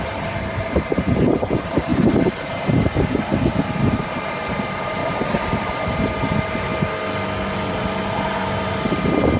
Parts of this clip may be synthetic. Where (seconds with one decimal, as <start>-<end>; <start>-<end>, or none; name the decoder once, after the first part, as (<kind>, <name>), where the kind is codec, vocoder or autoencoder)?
0.0-1.9 (vocoder, BigVGAN v2); 2.5-3.3; 4.0-5.0; 5.5-6.7; 7.7-9.4